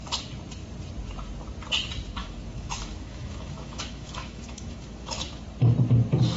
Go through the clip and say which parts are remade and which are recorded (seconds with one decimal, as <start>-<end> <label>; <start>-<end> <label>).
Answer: 0.0-2.2 recorded; 2.2-5.4 remade; 5.4-6.4 recorded